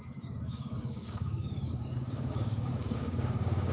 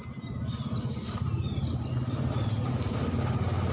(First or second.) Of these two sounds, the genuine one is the second